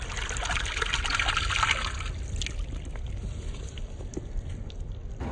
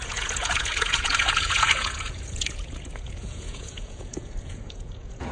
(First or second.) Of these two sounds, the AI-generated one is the second